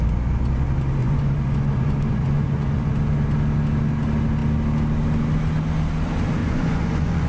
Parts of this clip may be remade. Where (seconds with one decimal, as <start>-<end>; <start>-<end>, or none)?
1.0-2.9; 6.4-7.3